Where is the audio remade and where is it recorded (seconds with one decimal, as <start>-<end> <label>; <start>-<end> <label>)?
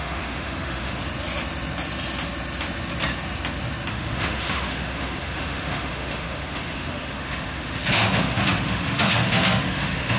0.0-1.0 remade; 1.0-3.9 recorded; 3.9-10.2 remade